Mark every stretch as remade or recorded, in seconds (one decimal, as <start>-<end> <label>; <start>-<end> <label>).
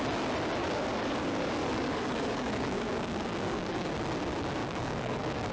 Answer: 0.0-0.6 recorded; 0.6-3.9 remade; 3.9-4.6 recorded; 4.6-5.5 remade